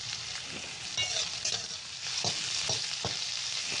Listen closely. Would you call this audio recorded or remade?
recorded